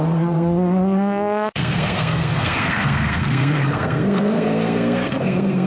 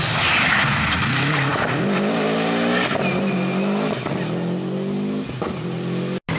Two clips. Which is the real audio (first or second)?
second